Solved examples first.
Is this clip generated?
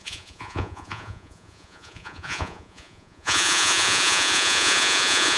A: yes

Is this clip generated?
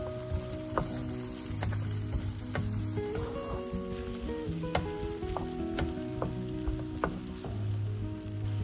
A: no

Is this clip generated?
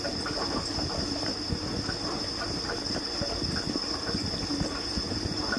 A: no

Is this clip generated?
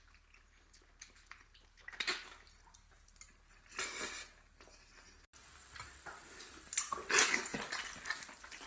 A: no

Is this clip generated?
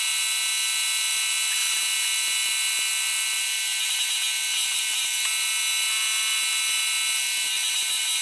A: no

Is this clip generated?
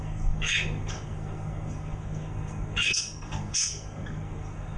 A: yes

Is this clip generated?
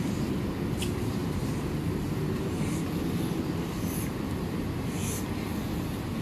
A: no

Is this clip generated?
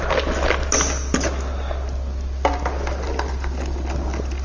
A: no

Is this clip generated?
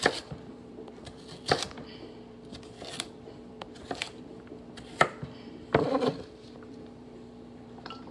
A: yes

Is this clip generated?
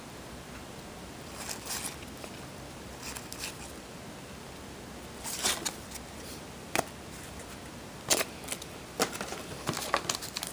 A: no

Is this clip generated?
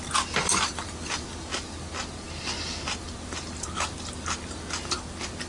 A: no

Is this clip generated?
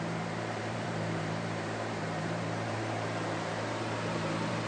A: yes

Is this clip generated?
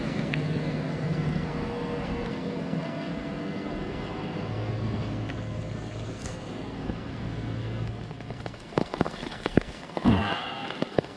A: yes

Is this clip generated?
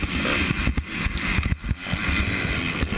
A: no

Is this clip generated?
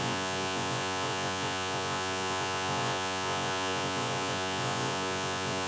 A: yes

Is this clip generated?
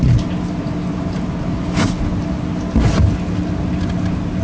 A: no